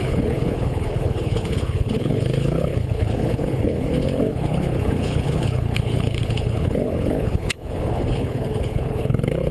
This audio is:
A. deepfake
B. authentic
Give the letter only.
A